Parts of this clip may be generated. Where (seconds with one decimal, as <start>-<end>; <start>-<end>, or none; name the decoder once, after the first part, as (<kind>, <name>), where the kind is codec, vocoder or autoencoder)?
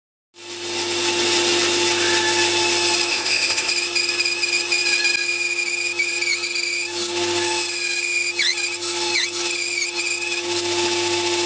3.1-3.7 (codec, ZipCodec)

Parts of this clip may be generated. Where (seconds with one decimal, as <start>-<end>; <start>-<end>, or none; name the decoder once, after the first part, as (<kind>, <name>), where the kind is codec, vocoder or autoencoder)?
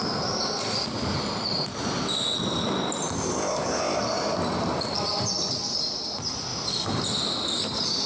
3.1-4.0 (codec, ZipCodec)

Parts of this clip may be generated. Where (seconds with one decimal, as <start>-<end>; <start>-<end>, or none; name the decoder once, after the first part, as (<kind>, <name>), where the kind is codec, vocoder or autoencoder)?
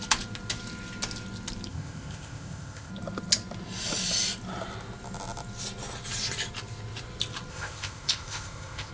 1.7-2.9 (codec, ZipCodec); 7.5-8.9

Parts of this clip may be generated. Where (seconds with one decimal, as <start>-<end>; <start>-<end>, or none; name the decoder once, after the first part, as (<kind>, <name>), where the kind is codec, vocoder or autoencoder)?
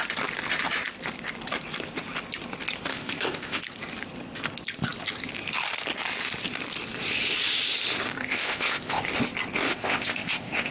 2.9-3.6 (codec, ZipCodec); 8.3-9.0; 9.7-10.7